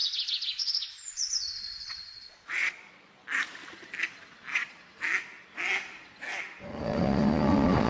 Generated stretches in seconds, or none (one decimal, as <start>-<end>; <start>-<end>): 0.0-3.1; 4.5-5.0; 6.7-7.9